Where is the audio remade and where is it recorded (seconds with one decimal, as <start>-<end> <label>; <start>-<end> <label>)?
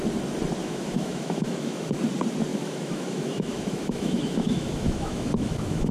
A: 0.0-0.6 recorded; 0.6-2.0 remade; 2.0-2.5 recorded; 2.5-5.9 remade